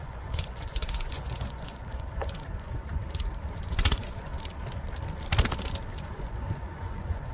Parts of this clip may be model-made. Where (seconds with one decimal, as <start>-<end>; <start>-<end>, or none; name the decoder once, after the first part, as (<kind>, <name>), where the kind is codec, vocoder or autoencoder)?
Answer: 0.0-3.0 (vocoder, Vocos); 3.6-4.3; 5.9-7.3